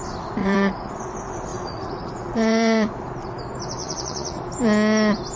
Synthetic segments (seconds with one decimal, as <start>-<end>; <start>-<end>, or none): 0.4-0.9; 1.5-2.9; 3.8-4.4

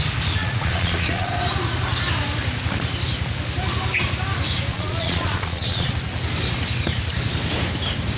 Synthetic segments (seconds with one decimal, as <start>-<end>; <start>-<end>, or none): 0.4-1.3; 4.7-5.9

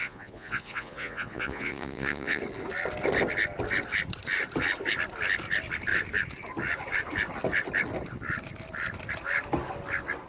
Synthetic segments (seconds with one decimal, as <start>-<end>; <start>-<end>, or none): 0.0-2.4

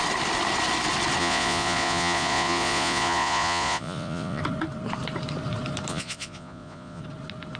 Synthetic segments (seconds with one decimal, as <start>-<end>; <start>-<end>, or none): 1.2-4.4; 5.9-7.0

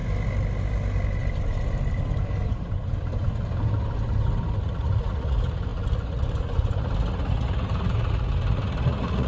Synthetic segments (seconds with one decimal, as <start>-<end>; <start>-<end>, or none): 4.6-9.3

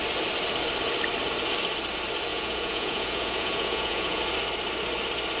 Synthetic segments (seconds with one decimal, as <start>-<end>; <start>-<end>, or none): 2.3-4.2

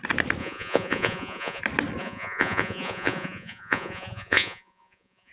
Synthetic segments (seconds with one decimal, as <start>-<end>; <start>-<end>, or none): 0.4-1.6; 2.0-5.3